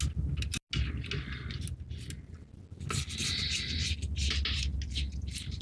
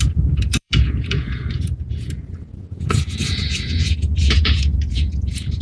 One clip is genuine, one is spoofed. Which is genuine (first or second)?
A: first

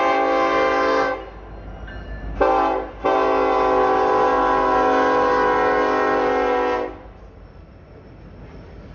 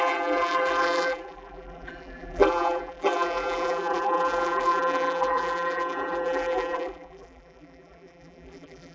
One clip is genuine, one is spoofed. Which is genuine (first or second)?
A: first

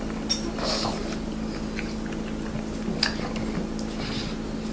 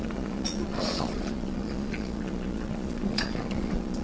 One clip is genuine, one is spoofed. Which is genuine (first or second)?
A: first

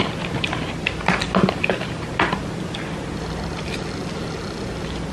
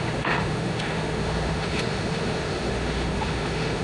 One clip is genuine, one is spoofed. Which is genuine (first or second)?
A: first